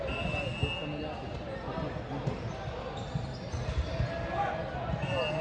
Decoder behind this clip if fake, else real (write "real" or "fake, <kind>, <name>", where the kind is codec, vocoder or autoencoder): real